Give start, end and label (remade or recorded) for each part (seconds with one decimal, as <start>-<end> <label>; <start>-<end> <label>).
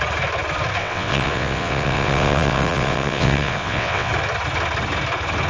0.0-0.8 recorded; 0.8-4.1 remade; 4.1-5.5 recorded